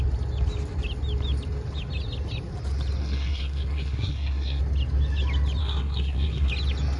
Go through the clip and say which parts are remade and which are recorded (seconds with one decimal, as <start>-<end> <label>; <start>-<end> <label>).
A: 0.0-3.0 recorded; 3.0-4.6 remade; 4.6-5.6 recorded; 5.6-6.5 remade; 6.5-7.0 recorded